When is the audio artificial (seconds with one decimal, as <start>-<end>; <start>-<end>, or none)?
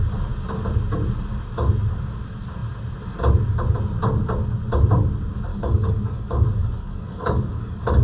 5.5-8.0